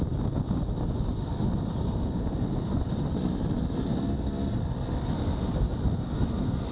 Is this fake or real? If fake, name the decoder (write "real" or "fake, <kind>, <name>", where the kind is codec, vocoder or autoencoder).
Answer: real